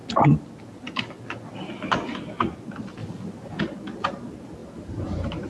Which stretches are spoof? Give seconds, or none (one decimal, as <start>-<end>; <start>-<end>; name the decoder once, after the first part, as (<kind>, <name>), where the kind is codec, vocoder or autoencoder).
4.6-5.5 (vocoder, BigVGAN v2)